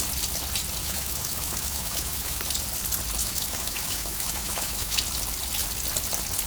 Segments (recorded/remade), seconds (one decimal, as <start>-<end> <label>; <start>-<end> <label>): 0.0-0.8 recorded; 0.8-2.4 remade; 2.4-3.2 recorded; 3.2-5.0 remade; 5.0-6.5 recorded